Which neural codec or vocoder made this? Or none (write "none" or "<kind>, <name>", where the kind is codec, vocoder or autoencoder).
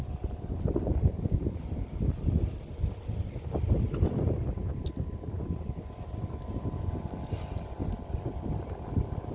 vocoder, BigVGAN v2